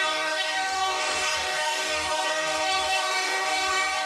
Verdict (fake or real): fake